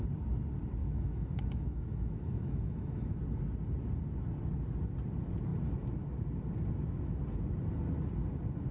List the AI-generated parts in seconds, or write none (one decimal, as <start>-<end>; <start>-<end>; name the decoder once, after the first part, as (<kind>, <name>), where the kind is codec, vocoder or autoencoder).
0.8-3.2 (autoencoder, DAC-VAE)